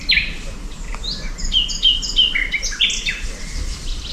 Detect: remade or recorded recorded